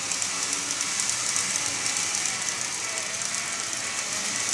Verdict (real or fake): real